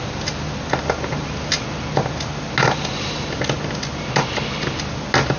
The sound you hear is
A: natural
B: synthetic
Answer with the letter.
A